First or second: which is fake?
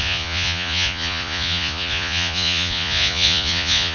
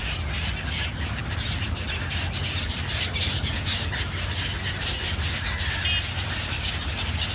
first